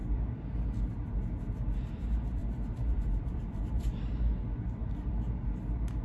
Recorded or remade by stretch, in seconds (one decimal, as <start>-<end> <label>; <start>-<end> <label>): 0.0-2.4 recorded; 2.4-4.1 remade; 4.1-6.0 recorded